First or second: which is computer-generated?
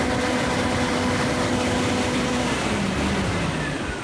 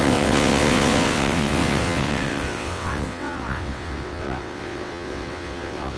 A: second